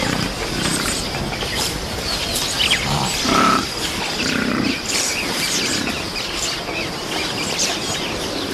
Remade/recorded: remade